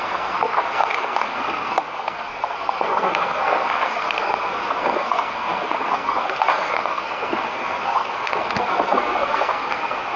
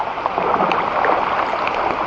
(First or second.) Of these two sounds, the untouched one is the second